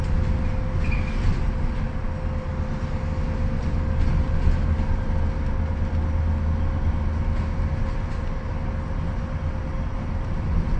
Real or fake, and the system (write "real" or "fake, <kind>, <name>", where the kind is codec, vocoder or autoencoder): real